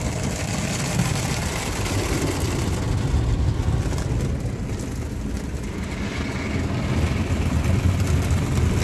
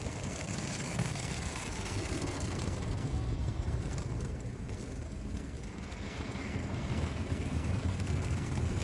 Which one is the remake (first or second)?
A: second